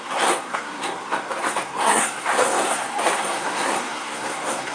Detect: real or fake fake